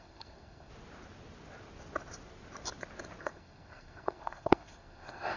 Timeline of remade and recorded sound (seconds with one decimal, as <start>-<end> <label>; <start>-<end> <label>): 0.0-0.7 remade; 0.7-3.2 recorded; 3.2-5.4 remade